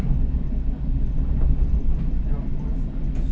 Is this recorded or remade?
recorded